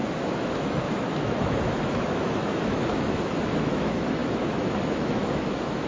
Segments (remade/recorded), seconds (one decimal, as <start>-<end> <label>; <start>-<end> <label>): 0.0-5.9 remade